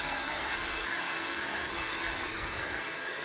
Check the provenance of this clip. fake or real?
fake